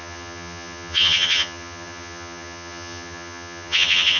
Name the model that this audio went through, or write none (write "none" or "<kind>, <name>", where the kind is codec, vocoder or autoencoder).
vocoder, HiFi-GAN